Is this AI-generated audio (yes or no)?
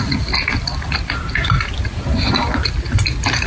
yes